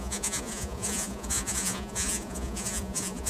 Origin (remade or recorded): remade